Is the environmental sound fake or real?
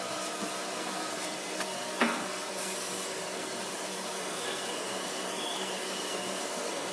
fake